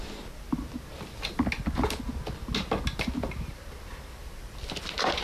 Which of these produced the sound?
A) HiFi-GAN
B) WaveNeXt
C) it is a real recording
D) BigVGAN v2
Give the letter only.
C